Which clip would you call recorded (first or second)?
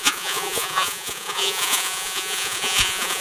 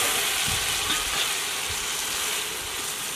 second